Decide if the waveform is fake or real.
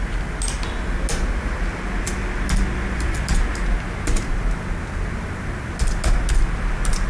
real